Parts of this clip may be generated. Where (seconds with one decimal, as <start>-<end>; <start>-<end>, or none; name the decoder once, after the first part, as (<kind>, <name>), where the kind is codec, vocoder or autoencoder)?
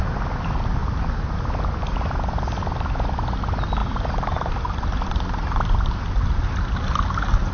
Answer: 3.8-4.5 (vocoder, BigVGAN v2)